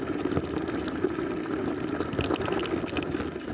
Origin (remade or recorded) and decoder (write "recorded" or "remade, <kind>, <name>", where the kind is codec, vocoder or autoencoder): recorded